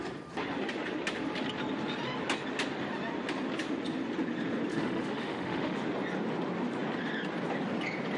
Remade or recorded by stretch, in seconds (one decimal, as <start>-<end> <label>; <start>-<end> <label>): 0.0-4.7 recorded; 4.7-5.8 remade; 5.8-8.2 recorded